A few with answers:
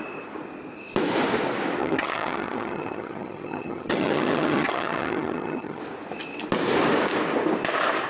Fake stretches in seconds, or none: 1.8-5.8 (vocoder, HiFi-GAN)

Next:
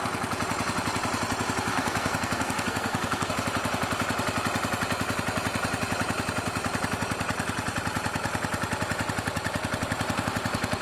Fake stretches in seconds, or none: 1.7-3.3 (codec, SNAC)

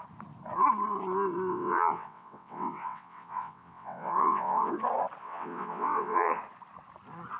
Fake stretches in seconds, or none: 1.5-4.7 (vocoder, WaveNeXt); 5.2-6.4

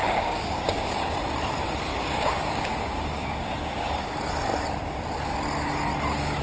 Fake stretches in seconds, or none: 0.0-1.0 (codec, DAC); 1.9-4.1

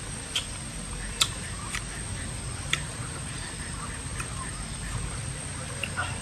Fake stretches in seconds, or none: none